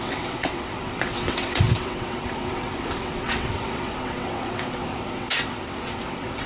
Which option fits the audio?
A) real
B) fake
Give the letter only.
B